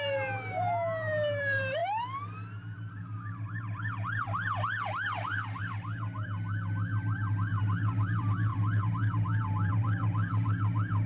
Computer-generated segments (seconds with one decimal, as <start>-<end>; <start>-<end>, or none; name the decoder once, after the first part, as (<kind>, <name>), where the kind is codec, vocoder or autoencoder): none